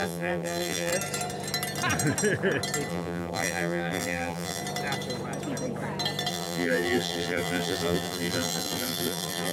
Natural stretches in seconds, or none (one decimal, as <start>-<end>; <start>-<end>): 0.9-2.9; 4.6-6.3